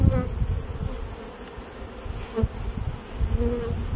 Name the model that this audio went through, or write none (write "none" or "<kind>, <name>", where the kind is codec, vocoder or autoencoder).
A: none